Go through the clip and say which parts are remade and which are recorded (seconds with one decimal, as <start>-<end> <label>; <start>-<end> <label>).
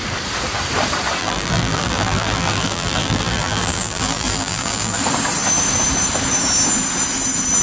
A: 0.0-1.2 recorded; 1.2-5.0 remade; 5.0-7.6 recorded